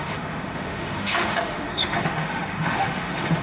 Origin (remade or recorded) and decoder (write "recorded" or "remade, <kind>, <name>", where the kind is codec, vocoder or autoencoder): remade, autoencoder, DAC-VAE